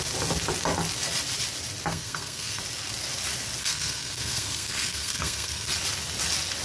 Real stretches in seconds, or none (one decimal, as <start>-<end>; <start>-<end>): 0.0-1.9; 2.6-3.6; 5.7-6.6